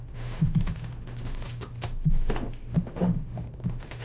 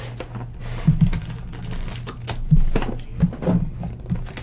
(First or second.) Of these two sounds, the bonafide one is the second